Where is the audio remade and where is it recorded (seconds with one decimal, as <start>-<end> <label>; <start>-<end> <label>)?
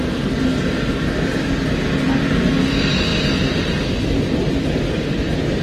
0.0-5.6 recorded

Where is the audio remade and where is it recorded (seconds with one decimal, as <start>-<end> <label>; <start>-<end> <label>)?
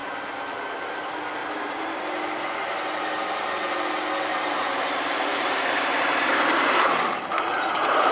0.0-1.4 recorded; 1.4-2.0 remade; 2.0-4.3 recorded; 4.3-7.1 remade; 7.1-8.1 recorded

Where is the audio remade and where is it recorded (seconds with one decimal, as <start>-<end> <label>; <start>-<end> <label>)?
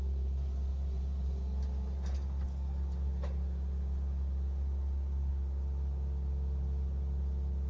0.0-7.7 recorded